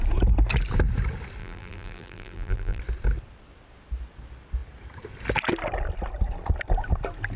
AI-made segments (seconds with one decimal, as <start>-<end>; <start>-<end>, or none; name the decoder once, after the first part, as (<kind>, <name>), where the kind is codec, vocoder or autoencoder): 1.4-2.8 (vocoder, BigVGAN v2)